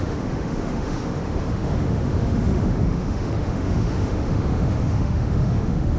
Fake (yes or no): yes